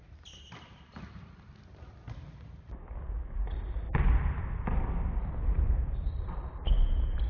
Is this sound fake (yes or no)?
no